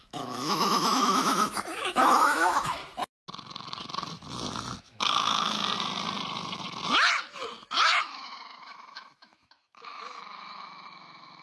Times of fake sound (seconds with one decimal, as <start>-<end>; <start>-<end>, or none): 0.0-2.8; 4.8-5.6; 8.0-11.4